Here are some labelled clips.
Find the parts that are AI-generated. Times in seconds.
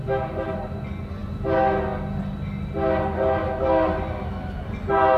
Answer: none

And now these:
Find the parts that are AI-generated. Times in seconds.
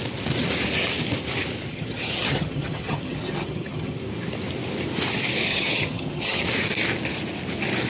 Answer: 1.7-4.0 (vocoder, HiFi-GAN); 5.5-6.4